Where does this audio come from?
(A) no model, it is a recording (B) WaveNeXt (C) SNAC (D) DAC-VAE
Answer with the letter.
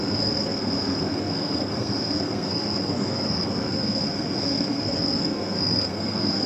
C